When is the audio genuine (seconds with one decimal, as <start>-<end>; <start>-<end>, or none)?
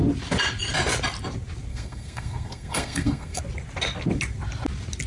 0.0-1.7; 3.4-5.1